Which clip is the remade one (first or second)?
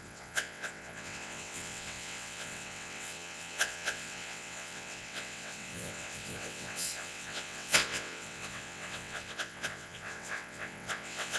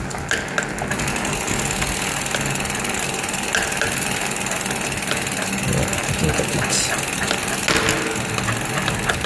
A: first